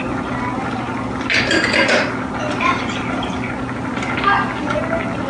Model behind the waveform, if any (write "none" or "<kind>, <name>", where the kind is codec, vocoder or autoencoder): none